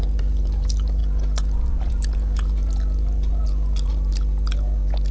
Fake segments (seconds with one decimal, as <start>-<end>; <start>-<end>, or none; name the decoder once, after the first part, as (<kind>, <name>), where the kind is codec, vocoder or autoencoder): none

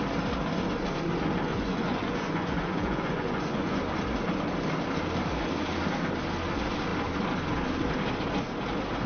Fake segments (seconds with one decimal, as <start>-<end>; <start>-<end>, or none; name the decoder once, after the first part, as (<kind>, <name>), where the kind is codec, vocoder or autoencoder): 1.5-3.8 (vocoder, Vocos)